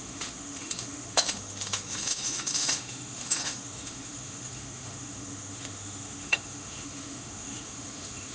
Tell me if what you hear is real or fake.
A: fake